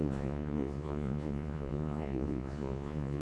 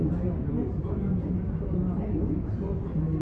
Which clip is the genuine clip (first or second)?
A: second